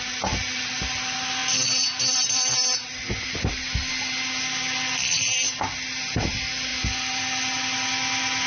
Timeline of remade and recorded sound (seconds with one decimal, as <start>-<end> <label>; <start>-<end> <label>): 0.0-8.5 recorded